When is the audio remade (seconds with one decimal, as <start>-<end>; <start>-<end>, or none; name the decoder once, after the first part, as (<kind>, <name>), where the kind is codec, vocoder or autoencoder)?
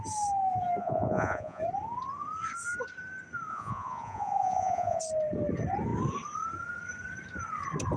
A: 0.8-1.6 (vocoder, Vocos); 3.5-5.0